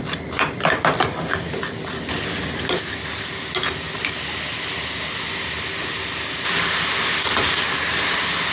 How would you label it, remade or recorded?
recorded